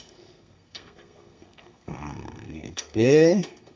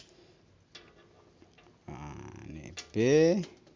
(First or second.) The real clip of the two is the second